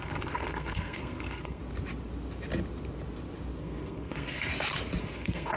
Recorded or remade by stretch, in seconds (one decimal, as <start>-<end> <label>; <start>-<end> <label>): 0.0-1.6 remade; 1.6-3.6 recorded; 3.6-4.5 remade; 4.5-5.0 recorded; 5.0-5.6 remade